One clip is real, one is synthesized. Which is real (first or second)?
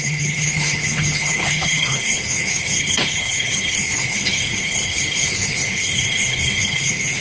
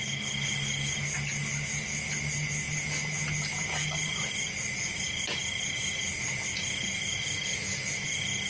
second